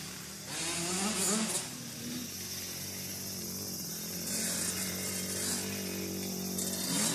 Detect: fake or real real